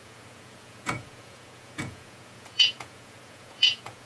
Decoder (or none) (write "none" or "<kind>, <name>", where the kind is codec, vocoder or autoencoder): vocoder, Vocos